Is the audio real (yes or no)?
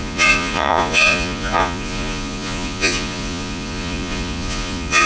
no